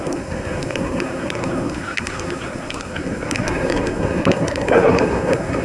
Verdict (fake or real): fake